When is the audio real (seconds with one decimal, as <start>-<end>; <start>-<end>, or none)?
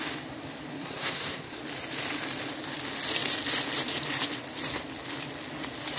0.0-0.7; 1.6-6.0